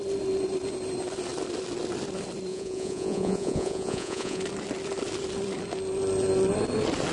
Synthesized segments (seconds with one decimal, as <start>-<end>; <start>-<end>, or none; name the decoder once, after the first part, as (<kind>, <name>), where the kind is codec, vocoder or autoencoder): 2.5-4.4 (vocoder, Vocos)